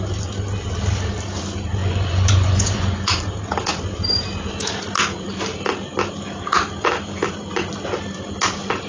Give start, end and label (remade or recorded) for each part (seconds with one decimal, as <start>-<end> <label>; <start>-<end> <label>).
0.0-1.8 recorded; 1.8-3.1 remade; 3.1-8.9 recorded